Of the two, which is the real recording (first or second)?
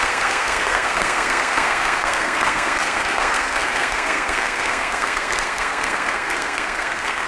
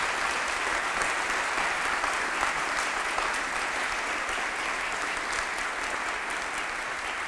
second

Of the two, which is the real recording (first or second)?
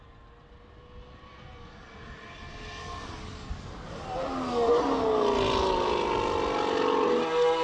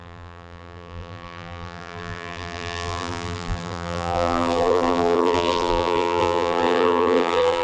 first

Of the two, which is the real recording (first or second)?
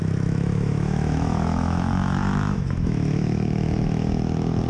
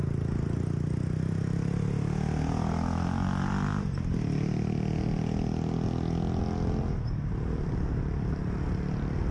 second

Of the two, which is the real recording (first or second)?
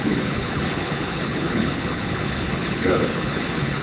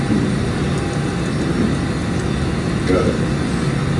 second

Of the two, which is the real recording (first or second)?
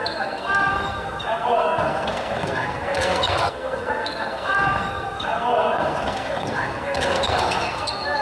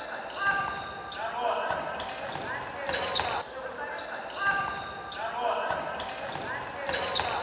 second